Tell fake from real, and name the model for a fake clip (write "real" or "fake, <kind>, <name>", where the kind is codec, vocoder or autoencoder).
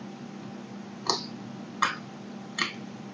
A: real